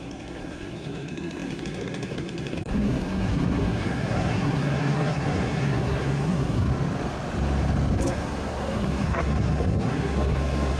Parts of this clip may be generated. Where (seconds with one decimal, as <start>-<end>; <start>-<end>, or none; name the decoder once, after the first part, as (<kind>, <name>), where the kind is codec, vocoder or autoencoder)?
0.0-6.7 (codec, SNAC); 8.0-10.8